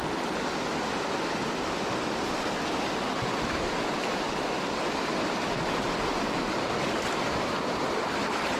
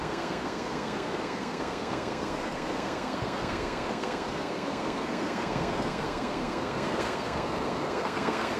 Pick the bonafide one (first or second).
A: first